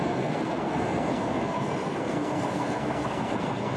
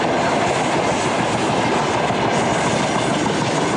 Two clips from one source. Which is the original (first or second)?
second